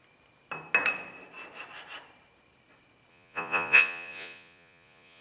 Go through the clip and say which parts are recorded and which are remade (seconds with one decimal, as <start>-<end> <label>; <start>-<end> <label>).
0.0-3.1 recorded; 3.1-5.2 remade